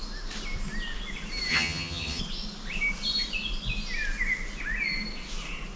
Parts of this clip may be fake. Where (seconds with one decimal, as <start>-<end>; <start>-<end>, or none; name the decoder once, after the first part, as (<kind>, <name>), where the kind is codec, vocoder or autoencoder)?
1.5-2.2 (vocoder, HiFi-GAN)